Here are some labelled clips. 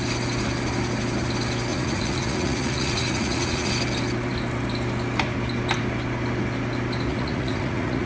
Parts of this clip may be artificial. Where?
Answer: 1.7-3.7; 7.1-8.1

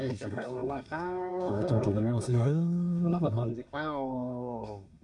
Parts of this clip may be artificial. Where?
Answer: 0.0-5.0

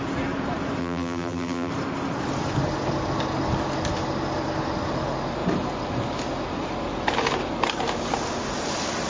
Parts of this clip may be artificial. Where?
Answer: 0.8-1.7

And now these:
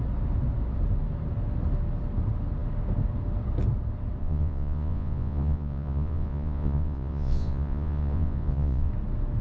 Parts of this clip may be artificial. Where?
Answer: 4.2-8.9

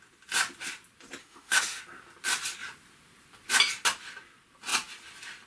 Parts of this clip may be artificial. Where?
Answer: 1.2-1.8

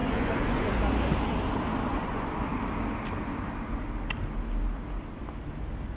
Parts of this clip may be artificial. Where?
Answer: 0.0-0.8; 1.9-2.5

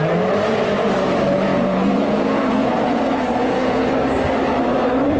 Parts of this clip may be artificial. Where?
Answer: 1.5-3.0; 3.4-3.9

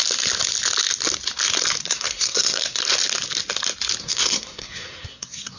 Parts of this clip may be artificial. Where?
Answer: 1.8-2.8; 4.0-5.6